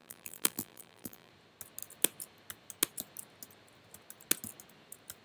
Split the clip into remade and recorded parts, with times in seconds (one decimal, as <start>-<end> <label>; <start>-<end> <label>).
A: 0.0-1.3 remade; 1.3-5.2 recorded